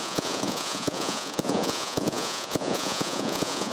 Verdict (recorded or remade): remade